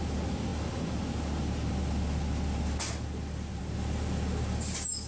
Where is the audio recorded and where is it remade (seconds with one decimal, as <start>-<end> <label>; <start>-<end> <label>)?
0.0-5.1 recorded